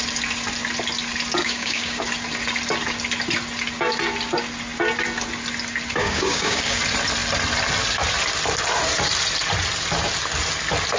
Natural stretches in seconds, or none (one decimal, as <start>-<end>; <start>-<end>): 0.0-1.4; 2.0-6.0; 6.8-11.0